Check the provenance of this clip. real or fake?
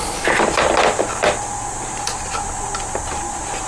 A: real